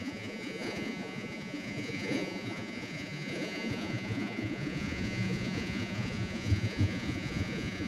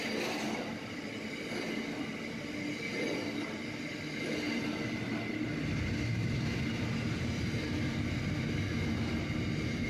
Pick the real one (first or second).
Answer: second